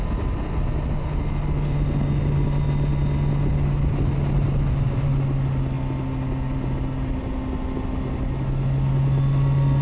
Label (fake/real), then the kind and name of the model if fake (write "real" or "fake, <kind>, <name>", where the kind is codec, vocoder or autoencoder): real